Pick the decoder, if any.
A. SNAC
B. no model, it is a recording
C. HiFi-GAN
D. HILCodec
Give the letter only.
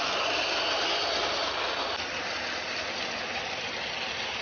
B